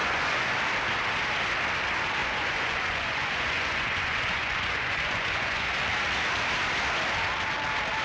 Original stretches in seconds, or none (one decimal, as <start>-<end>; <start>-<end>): 0.5-2.2; 5.7-8.0